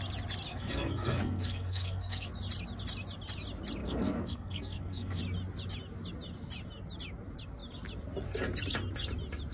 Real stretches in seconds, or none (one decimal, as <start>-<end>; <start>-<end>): 0.0-0.5; 2.3-3.8; 5.2-9.5